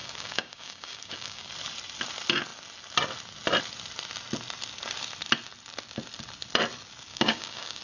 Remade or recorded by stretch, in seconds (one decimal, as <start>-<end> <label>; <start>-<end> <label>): 0.0-1.5 remade; 1.5-7.1 recorded; 7.1-7.8 remade